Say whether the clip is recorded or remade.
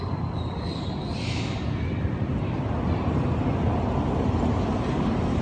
recorded